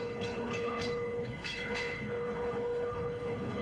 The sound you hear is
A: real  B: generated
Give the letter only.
B